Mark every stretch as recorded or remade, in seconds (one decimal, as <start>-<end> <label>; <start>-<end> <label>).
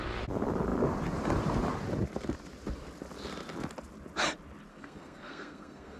0.0-4.7 recorded; 4.7-6.0 remade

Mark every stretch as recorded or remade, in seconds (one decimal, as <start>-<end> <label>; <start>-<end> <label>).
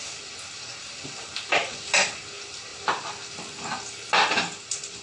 0.0-5.0 recorded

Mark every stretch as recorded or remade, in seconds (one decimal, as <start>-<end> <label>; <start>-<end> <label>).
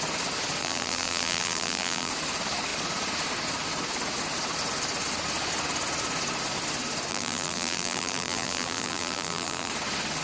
0.0-0.6 recorded; 0.6-2.1 remade; 2.1-7.1 recorded; 7.1-9.7 remade; 9.7-10.2 recorded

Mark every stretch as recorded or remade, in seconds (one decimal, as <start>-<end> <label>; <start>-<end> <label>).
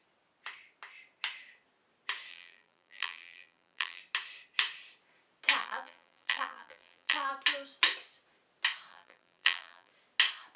0.0-2.3 recorded; 2.3-4.0 remade; 4.0-5.6 recorded; 5.6-7.3 remade; 7.3-8.9 recorded; 8.9-9.9 remade; 9.9-10.6 recorded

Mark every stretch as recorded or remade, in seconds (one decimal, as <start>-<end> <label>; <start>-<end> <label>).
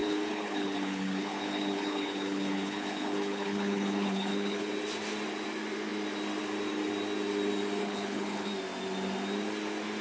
0.0-4.7 remade; 4.7-7.8 recorded; 7.8-8.5 remade; 8.5-10.0 recorded